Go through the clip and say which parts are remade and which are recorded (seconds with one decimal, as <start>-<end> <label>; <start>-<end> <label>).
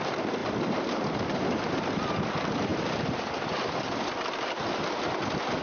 0.0-0.4 recorded; 0.4-1.0 remade; 1.0-2.7 recorded; 2.7-5.0 remade; 5.0-5.6 recorded